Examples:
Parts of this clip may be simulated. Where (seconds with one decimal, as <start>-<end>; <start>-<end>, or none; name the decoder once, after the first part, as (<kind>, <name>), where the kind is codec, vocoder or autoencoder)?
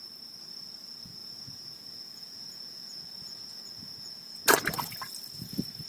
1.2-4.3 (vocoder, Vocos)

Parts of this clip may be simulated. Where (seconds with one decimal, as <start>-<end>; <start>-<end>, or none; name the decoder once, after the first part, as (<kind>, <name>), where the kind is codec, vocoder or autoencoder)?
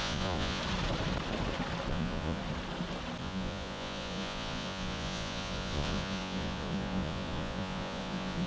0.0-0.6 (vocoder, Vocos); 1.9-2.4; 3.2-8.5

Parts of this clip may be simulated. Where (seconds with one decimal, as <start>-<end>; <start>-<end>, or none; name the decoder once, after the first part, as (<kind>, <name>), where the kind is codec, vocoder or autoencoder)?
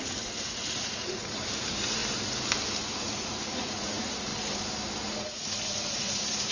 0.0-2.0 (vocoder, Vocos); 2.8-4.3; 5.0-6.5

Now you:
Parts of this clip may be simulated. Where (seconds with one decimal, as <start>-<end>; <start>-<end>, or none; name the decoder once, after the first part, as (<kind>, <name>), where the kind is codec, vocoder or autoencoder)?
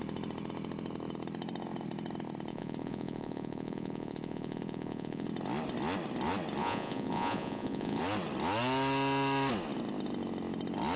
2.5-5.3 (vocoder, Vocos); 6.6-8.0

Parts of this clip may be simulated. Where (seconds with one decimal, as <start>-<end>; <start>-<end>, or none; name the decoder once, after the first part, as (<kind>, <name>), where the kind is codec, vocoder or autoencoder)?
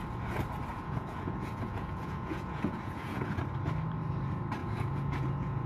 0.7-3.4 (vocoder, Vocos); 4.6-5.7